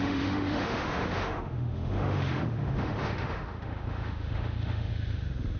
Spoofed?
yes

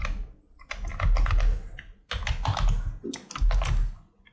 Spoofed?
no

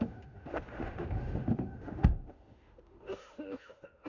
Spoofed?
yes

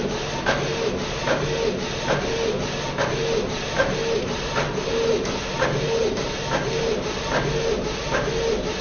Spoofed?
no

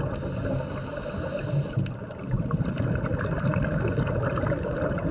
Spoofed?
no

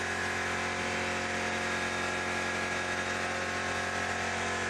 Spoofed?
no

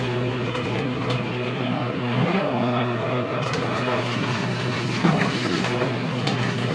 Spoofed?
yes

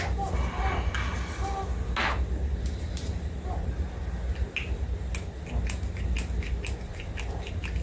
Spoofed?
no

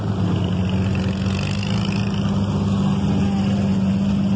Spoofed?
no